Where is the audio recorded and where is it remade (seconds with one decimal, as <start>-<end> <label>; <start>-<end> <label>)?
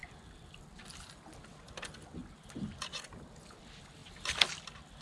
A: 0.0-1.0 remade; 1.0-2.2 recorded; 2.2-3.6 remade; 3.6-5.0 recorded